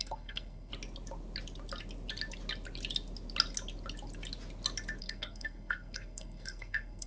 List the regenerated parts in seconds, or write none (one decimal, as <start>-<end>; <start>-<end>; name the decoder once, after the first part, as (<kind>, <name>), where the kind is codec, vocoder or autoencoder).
0.0-0.7 (codec, SNAC); 5.0-7.1

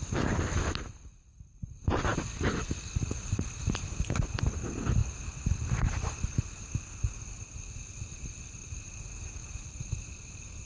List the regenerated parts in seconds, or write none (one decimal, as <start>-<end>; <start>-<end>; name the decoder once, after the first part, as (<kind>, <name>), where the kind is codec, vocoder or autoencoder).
none

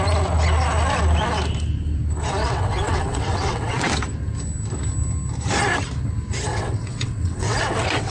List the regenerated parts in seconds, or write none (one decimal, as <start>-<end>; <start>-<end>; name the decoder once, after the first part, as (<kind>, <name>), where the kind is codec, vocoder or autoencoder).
2.4-3.9 (vocoder, WaveNeXt); 6.5-8.1

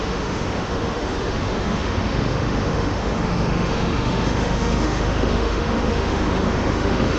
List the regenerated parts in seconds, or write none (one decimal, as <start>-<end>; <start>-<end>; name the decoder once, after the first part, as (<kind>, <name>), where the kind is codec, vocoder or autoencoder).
0.0-7.2 (autoencoder, DAC-VAE)

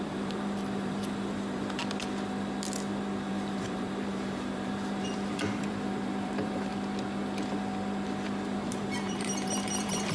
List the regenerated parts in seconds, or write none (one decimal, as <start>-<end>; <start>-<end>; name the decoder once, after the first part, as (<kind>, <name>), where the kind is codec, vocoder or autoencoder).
0.0-1.8 (vocoder, BigVGAN v2); 3.3-6.7; 8.6-10.1

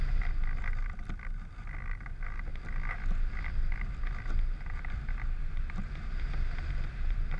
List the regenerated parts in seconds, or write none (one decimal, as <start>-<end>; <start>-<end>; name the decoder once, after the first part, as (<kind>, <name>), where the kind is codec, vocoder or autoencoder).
none

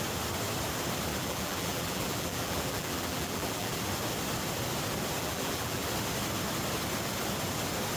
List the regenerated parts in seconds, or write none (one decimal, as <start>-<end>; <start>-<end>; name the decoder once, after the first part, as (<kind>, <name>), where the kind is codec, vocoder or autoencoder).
1.1-3.8 (vocoder, BigVGAN v2); 5.2-5.9

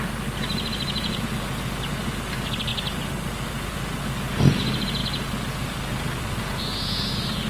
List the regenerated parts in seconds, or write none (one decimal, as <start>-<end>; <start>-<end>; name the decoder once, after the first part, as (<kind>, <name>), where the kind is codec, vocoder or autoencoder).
0.5-1.3 (vocoder, BigVGAN v2)